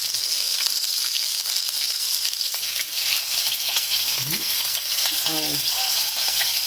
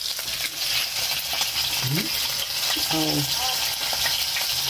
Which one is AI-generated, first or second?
first